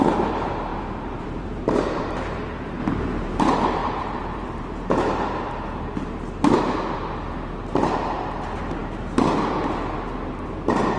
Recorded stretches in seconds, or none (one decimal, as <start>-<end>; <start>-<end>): 0.0-0.7; 2.4-2.8; 3.4-3.8; 5.9-11.0